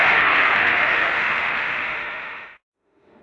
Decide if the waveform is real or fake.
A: fake